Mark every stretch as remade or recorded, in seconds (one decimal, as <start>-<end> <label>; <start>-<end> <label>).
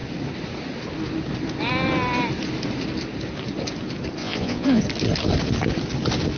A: 0.0-4.2 recorded; 4.2-4.8 remade; 4.8-6.4 recorded